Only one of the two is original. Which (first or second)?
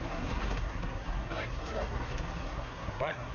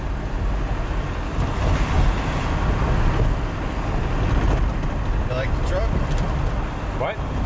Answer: second